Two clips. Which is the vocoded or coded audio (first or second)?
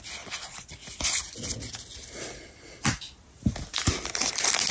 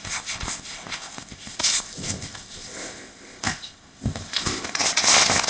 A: second